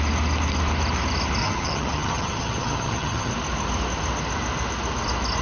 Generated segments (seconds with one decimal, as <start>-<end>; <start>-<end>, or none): 1.4-3.3